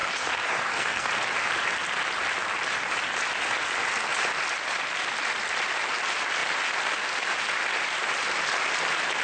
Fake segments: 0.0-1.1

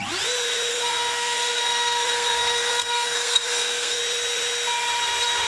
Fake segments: 0.7-4.0

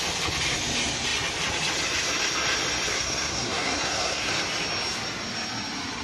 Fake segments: 2.9-4.3

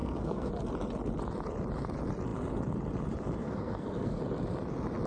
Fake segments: 0.0-0.5; 3.4-4.2

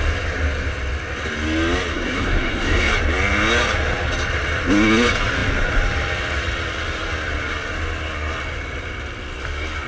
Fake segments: 1.9-2.9